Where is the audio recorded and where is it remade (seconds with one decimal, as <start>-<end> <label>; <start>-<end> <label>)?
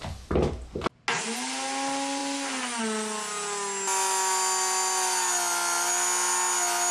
0.0-6.9 recorded